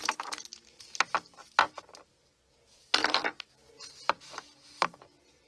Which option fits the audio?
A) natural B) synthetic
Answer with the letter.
A